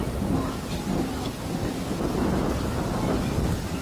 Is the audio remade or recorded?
recorded